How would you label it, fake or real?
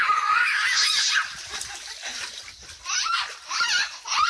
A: real